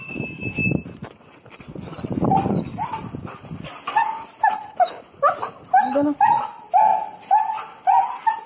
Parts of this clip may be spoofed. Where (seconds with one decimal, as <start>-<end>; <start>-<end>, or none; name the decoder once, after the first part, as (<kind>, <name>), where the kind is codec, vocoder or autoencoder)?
none